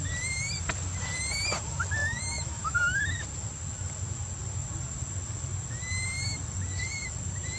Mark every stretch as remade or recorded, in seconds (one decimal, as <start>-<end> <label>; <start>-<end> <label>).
0.0-2.0 recorded; 2.0-3.0 remade; 3.0-7.6 recorded

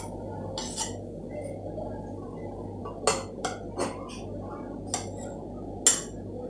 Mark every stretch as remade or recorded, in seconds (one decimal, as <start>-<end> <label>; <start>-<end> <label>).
0.0-6.5 recorded

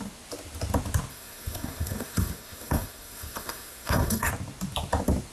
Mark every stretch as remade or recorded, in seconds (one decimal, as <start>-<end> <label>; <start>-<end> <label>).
0.0-1.1 recorded; 1.1-4.3 remade; 4.3-5.3 recorded

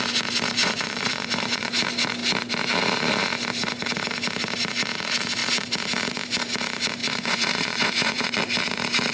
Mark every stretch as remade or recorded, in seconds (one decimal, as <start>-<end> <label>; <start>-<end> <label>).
0.0-0.6 recorded; 0.6-1.7 remade; 1.7-7.0 recorded; 7.0-8.3 remade; 8.3-9.1 recorded